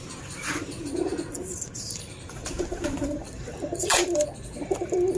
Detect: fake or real fake